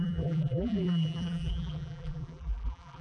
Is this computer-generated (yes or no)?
yes